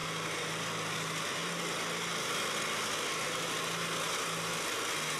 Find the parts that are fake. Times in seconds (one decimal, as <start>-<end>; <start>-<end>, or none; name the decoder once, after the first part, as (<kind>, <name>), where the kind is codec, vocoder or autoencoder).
none